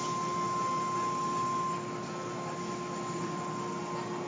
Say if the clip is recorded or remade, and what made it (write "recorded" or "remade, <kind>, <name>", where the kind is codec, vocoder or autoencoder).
recorded